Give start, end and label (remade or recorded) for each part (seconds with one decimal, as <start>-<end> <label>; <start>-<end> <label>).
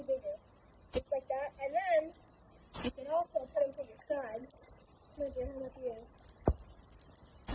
0.0-7.5 recorded